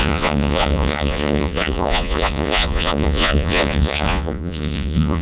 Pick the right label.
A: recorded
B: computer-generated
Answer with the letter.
B